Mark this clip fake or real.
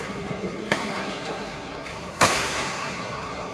fake